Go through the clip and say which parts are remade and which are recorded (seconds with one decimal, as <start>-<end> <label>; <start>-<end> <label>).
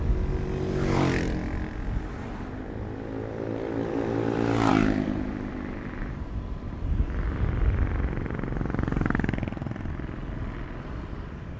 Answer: 0.0-11.6 recorded